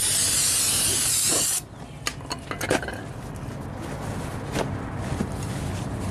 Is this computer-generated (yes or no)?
no